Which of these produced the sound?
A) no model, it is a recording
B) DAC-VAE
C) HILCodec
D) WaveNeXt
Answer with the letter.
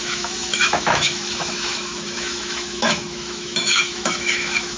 B